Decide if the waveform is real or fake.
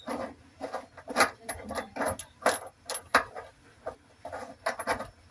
real